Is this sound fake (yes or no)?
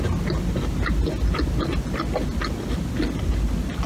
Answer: no